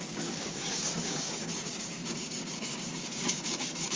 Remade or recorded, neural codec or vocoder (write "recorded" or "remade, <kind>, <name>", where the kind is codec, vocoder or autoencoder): remade, codec, DAC